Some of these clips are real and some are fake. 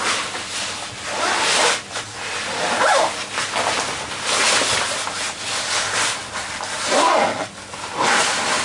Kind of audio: real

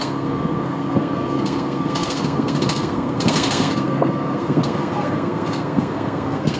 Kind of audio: fake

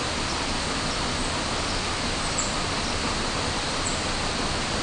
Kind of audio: real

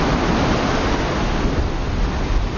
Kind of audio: real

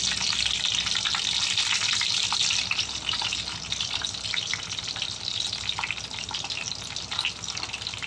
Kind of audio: real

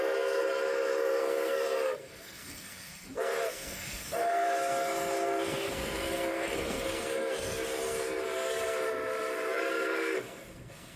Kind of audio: fake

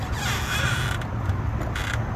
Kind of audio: real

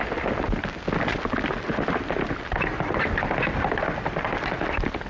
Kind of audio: real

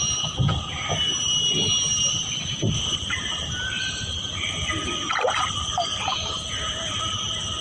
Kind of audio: real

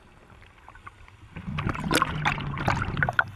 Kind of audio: real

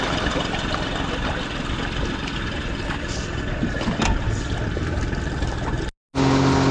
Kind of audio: real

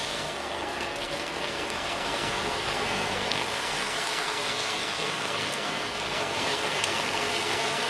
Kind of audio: fake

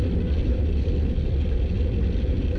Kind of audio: real